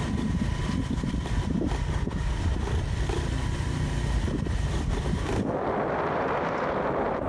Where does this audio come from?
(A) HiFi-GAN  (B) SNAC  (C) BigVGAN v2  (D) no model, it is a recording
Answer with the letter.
C